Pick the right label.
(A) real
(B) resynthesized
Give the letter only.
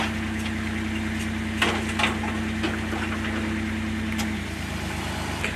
A